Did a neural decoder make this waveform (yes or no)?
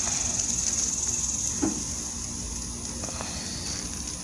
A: no